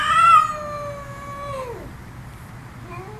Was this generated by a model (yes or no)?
no